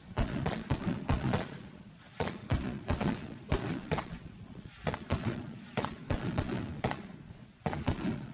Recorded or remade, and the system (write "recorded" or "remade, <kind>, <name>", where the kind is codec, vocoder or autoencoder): remade, vocoder, Vocos